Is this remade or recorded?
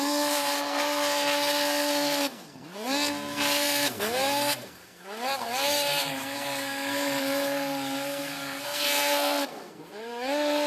remade